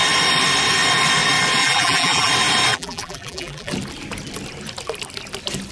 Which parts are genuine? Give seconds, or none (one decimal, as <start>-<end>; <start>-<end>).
0.0-1.6; 2.3-2.7; 3.7-5.7